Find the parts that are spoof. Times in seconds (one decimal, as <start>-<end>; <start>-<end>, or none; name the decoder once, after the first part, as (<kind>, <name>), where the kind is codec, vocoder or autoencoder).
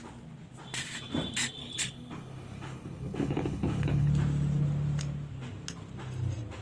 1.6-4.1 (codec, HILCodec)